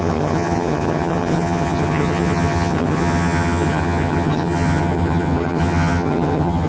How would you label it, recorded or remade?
remade